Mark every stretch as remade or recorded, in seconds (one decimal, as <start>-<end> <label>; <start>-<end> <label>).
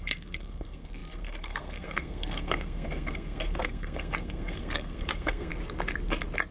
0.0-5.5 remade; 5.5-6.5 recorded